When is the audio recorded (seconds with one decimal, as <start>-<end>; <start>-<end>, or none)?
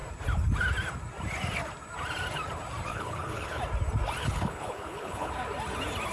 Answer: 0.0-2.9; 3.6-4.2; 5.3-6.1